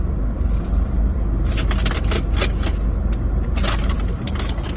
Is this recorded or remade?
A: recorded